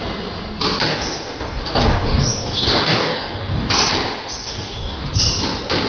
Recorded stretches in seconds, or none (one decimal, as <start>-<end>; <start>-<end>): 0.0-0.9; 3.7-4.4; 5.0-5.9